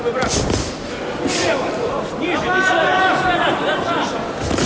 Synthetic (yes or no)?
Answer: no